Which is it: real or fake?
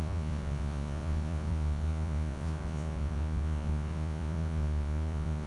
fake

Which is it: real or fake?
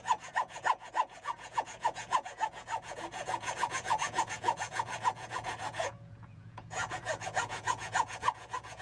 fake